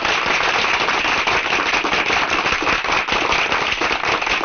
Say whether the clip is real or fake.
real